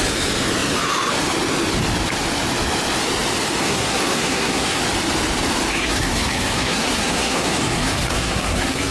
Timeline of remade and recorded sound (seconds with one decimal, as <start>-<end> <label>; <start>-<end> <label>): 0.0-3.6 recorded; 3.6-4.8 remade; 4.8-5.7 recorded; 5.7-8.9 remade